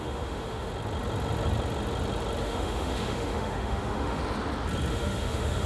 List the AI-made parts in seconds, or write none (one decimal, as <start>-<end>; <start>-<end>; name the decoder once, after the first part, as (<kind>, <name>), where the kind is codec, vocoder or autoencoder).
0.0-0.7 (autoencoder, DAC-VAE); 2.4-4.2; 4.9-5.7